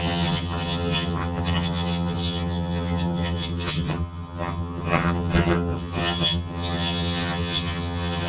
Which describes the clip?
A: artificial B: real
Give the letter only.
A